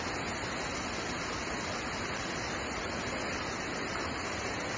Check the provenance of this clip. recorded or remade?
recorded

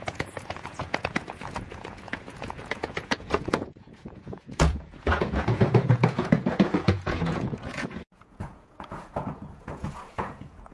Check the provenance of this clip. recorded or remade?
remade